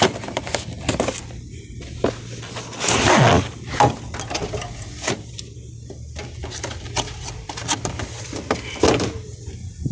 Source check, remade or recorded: recorded